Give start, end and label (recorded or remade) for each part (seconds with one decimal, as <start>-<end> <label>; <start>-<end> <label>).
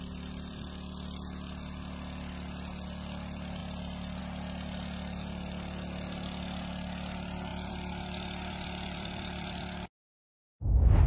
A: 0.0-7.5 recorded; 7.5-10.1 remade; 10.1-11.1 recorded